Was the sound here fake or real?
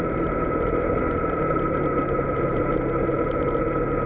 real